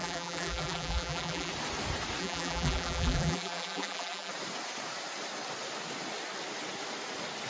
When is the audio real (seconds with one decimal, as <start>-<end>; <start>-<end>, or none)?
1.5-2.2; 4.3-7.5